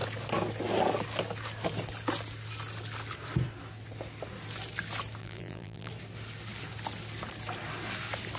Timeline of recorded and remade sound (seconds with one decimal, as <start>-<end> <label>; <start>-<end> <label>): 0.0-5.2 recorded; 5.2-5.9 remade; 5.9-8.4 recorded